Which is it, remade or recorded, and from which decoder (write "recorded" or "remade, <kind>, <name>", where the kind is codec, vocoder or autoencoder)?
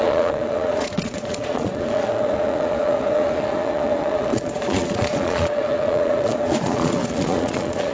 remade, vocoder, Vocos